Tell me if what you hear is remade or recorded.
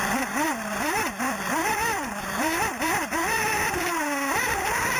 remade